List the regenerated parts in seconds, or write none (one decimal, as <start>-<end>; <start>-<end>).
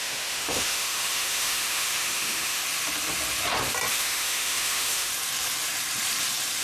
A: 0.0-2.6; 3.9-5.1